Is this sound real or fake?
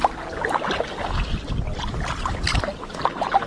real